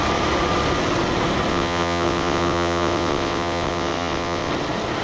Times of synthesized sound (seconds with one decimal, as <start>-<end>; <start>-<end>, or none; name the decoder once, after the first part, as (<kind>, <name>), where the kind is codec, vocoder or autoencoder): 1.5-4.5 (vocoder, WaveNeXt)